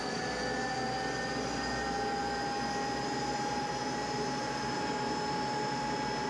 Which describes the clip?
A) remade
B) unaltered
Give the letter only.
B